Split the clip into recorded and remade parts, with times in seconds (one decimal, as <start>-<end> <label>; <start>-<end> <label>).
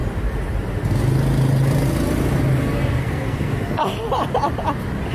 0.0-3.0 recorded; 3.0-3.8 remade; 3.8-5.1 recorded